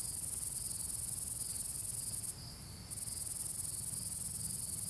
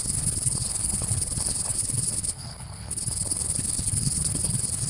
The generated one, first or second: second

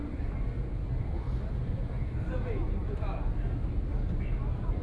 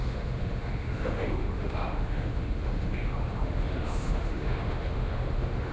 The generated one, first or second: second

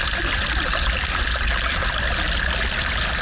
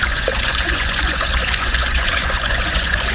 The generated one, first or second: second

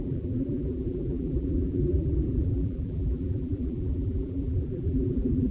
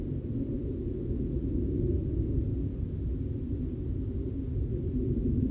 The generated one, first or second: first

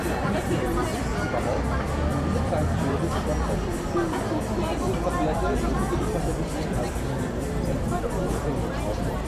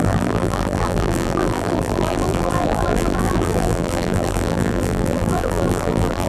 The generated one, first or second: second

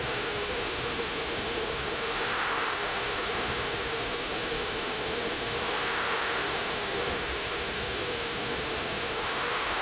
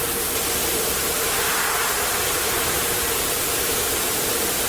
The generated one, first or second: first